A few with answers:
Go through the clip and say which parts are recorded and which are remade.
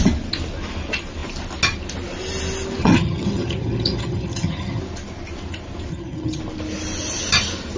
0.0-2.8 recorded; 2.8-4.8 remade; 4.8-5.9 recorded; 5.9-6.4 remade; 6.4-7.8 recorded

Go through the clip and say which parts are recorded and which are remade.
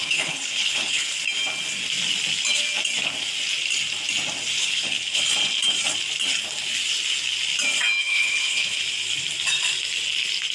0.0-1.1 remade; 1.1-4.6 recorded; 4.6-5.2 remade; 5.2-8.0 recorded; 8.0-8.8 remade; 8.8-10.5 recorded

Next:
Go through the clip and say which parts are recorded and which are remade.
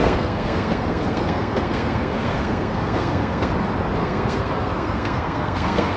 0.0-3.5 remade; 3.5-4.0 recorded; 4.0-6.0 remade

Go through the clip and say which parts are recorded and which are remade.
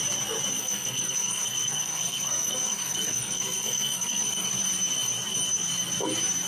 0.0-0.6 recorded; 0.6-4.5 remade; 4.5-6.5 recorded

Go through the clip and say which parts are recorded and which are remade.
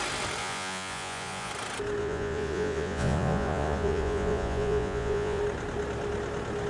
0.0-0.4 recorded; 0.4-1.5 remade; 1.5-2.0 recorded; 2.0-5.4 remade; 5.4-6.7 recorded